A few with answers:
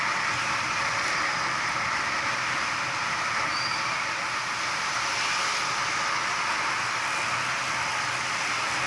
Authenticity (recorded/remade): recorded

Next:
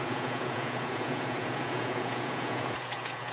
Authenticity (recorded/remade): remade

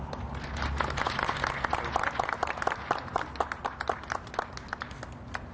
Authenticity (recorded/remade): recorded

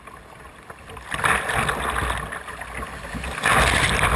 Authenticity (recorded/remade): recorded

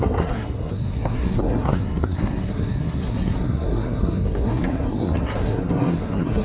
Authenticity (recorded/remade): remade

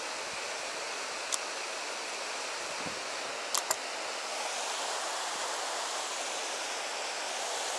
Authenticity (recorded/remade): recorded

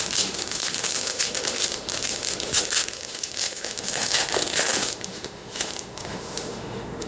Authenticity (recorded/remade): remade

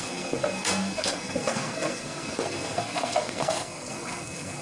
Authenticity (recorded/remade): remade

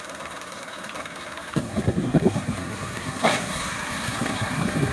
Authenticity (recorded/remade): remade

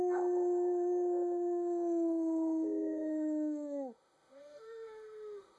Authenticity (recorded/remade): remade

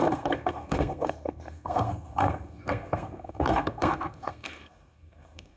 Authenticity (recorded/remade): remade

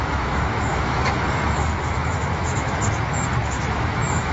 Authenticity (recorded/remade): remade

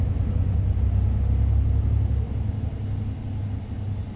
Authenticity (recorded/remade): recorded